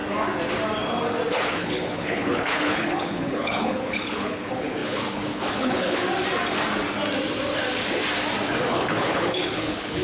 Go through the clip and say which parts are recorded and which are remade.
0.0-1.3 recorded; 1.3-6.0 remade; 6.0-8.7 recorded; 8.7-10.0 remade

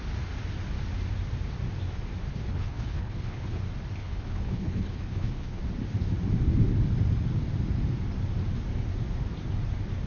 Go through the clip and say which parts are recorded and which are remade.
0.0-2.3 recorded; 2.3-3.6 remade; 3.6-4.0 recorded; 4.0-5.6 remade; 5.6-10.1 recorded